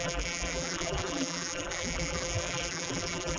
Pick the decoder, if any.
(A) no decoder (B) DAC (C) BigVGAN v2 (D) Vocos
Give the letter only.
C